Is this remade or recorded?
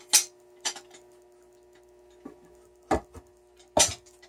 recorded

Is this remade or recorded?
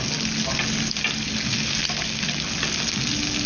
recorded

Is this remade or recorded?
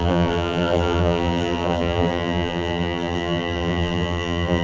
remade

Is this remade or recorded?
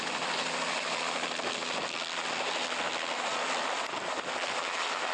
recorded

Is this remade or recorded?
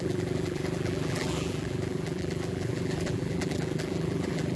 remade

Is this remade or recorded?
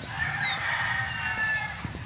recorded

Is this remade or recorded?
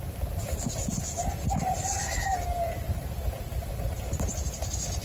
recorded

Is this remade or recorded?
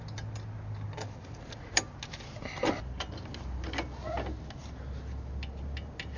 recorded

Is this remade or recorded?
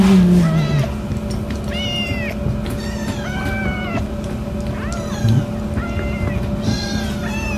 recorded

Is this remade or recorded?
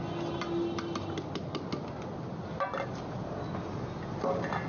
recorded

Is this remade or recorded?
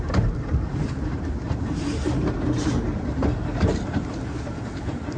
remade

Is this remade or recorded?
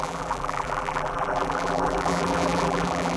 remade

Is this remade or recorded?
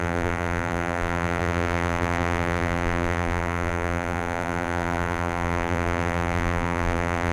remade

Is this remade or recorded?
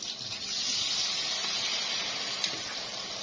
recorded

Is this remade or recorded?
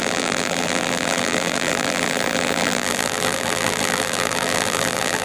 remade